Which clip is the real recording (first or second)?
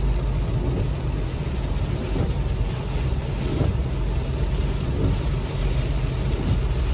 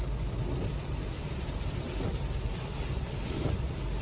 first